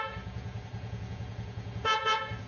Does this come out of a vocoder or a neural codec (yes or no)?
yes